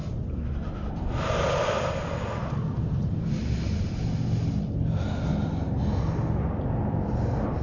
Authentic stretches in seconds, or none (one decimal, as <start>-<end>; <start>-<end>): 0.0-7.6